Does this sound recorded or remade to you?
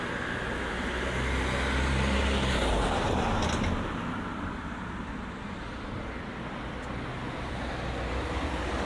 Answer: recorded